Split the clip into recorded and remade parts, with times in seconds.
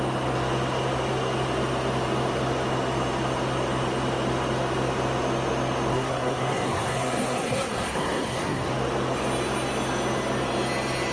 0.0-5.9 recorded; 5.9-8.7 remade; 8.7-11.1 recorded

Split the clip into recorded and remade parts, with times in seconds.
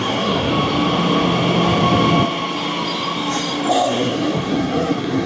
0.0-0.5 remade; 0.5-3.7 recorded; 3.7-5.3 remade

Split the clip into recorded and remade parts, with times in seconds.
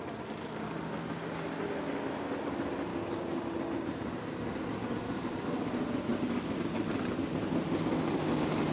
0.0-2.9 recorded; 2.9-3.4 remade; 3.4-8.7 recorded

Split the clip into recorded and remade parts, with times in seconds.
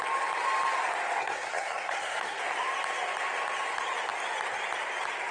0.0-1.2 recorded; 1.2-2.4 remade; 2.4-5.3 recorded